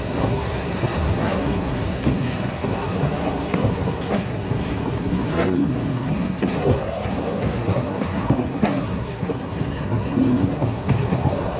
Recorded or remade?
remade